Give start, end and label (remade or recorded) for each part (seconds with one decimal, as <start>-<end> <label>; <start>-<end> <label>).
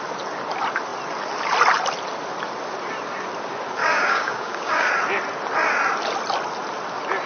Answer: 0.0-3.8 recorded; 3.8-4.9 remade; 4.9-7.3 recorded